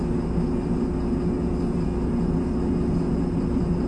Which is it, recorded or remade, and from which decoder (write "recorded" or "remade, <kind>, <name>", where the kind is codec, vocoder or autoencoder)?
recorded